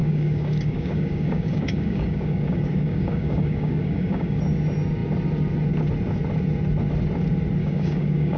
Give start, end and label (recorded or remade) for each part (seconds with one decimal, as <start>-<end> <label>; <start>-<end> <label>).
0.0-4.4 remade; 4.4-7.6 recorded; 7.6-8.4 remade